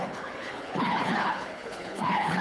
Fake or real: fake